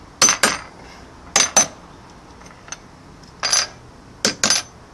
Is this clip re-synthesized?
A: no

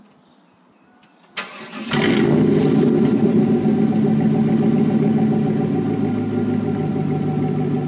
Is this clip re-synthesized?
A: no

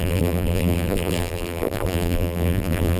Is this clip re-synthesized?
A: yes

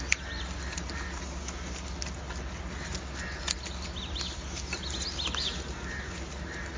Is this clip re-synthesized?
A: no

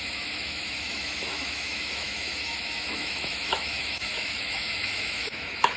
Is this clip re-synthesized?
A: yes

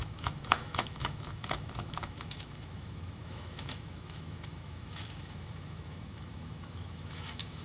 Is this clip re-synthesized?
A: yes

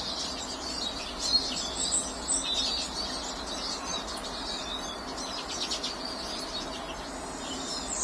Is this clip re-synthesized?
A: no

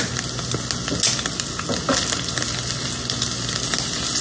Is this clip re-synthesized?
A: no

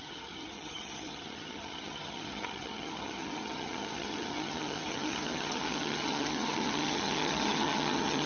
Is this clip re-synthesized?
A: yes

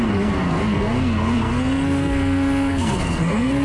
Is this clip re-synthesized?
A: yes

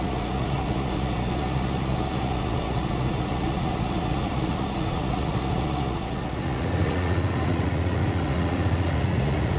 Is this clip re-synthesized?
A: yes